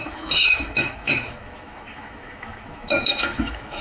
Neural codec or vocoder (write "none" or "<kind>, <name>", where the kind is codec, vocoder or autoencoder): autoencoder, DAC-VAE